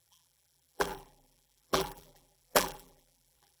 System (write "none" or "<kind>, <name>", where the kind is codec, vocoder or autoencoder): vocoder, BigVGAN v2